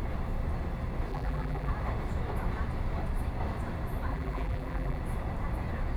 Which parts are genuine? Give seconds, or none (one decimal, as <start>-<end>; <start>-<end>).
0.0-1.1; 1.7-4.1; 5.0-6.0